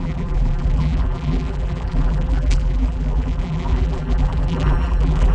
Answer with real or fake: fake